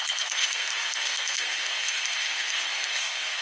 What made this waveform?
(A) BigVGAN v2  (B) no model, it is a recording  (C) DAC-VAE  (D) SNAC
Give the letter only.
D